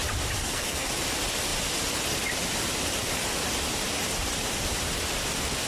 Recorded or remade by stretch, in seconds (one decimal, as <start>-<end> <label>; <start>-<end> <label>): 0.0-0.4 recorded; 0.4-0.9 remade; 0.9-5.7 recorded

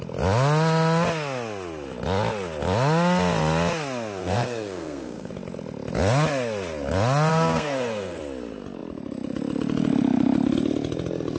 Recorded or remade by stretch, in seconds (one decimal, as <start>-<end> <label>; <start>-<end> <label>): 0.0-4.2 recorded; 4.2-5.3 remade; 5.3-7.3 recorded; 7.3-8.2 remade; 8.2-11.4 recorded